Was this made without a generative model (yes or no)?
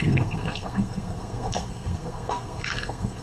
no